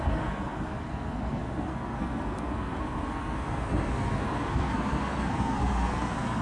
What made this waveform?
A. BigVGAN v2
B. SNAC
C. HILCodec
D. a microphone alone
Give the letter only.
B